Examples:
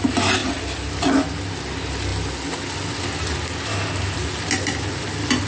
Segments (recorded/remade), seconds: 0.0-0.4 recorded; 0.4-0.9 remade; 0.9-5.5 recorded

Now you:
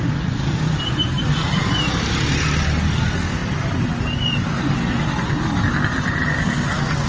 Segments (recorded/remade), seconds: 0.0-3.4 recorded; 3.4-3.9 remade; 3.9-7.1 recorded